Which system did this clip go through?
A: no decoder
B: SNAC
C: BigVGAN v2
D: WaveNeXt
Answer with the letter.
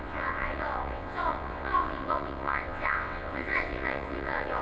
D